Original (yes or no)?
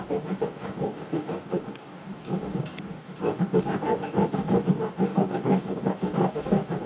no